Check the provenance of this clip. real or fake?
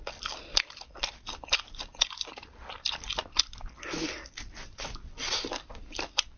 real